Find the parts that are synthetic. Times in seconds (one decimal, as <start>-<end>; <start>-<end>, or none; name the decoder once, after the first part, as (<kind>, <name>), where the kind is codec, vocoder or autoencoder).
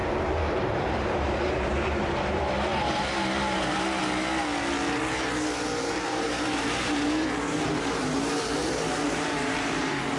0.0-4.0 (vocoder, BigVGAN v2); 5.9-10.2